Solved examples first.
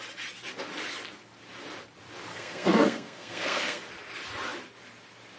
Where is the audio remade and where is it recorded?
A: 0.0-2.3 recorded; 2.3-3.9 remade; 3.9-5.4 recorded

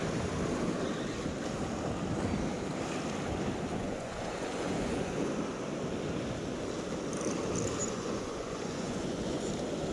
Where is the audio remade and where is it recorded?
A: 0.0-3.7 recorded; 3.7-5.3 remade; 5.3-7.8 recorded; 7.8-9.5 remade; 9.5-9.9 recorded

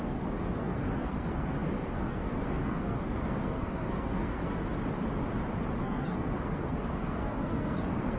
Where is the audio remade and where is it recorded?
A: 0.0-4.6 remade; 4.6-5.8 recorded; 5.8-8.2 remade

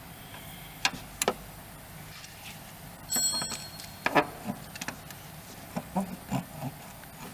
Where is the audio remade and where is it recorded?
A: 0.0-7.3 recorded

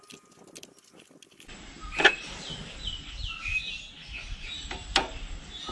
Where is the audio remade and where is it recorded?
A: 0.0-5.7 recorded

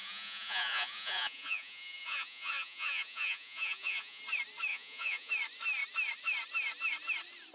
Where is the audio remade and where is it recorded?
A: 0.0-4.2 remade; 4.2-4.7 recorded; 4.7-5.3 remade; 5.3-7.5 recorded

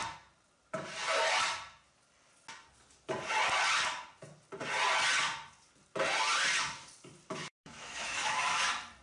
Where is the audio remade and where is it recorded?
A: 0.0-7.4 recorded; 7.4-8.6 remade; 8.6-9.0 recorded

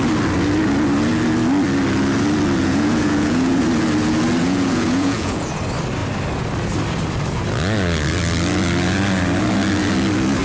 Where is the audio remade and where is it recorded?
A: 0.0-2.6 recorded; 2.6-3.6 remade; 3.6-4.4 recorded; 4.4-5.6 remade; 5.6-10.4 recorded